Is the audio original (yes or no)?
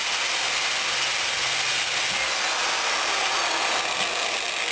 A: yes